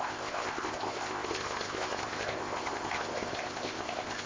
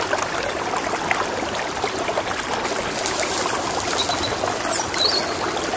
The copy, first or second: first